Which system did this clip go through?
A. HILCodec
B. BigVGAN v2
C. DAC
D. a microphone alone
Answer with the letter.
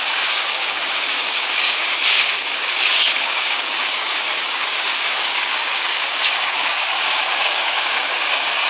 C